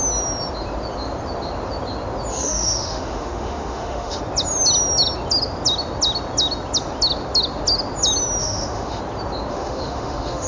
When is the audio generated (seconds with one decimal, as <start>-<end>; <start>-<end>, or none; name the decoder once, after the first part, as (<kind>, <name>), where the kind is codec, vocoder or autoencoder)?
2.3-4.2 (autoencoder, DAC-VAE); 8.4-9.0; 9.5-10.5